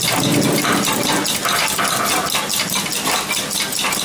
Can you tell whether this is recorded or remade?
recorded